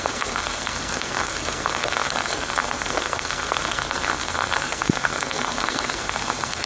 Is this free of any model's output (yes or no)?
no